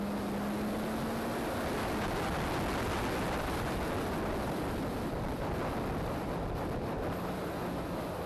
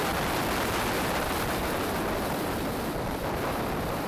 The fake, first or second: second